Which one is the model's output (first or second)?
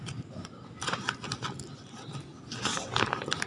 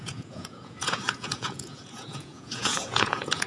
second